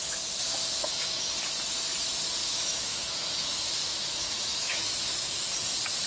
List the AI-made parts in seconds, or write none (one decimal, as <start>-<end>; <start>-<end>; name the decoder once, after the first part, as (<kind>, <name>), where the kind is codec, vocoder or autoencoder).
0.8-1.3 (autoencoder, DAC-VAE); 2.4-5.5